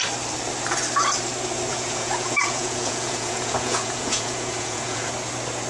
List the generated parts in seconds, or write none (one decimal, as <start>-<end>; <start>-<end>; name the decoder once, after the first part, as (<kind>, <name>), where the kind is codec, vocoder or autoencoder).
1.7-5.1 (vocoder, Vocos)